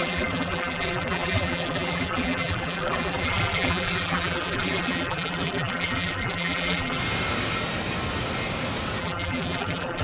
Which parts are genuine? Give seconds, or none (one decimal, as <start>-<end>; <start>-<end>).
7.0-9.0